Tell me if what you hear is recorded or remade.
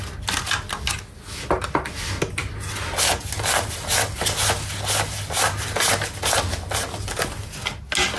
recorded